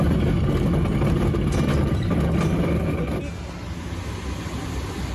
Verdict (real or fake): real